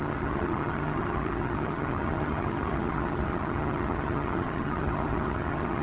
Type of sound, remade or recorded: remade